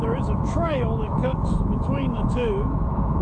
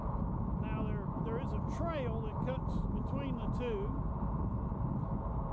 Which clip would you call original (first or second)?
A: second